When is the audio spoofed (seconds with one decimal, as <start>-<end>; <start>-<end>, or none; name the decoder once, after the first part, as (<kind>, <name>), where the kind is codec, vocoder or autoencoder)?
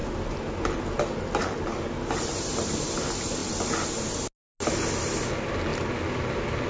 none